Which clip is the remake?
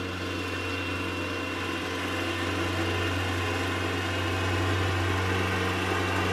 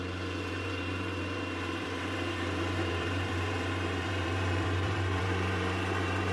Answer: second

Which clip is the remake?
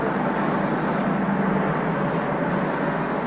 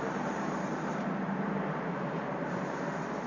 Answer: second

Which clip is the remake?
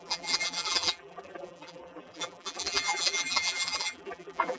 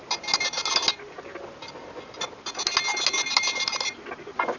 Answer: first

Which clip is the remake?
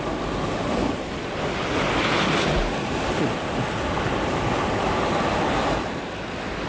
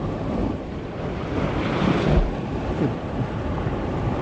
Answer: second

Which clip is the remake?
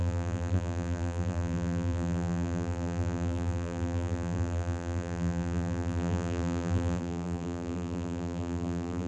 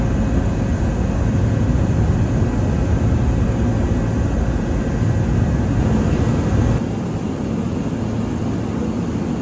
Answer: first